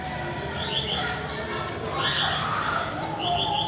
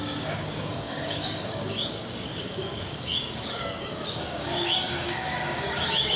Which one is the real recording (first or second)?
first